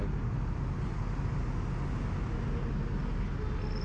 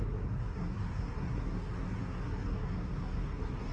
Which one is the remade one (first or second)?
second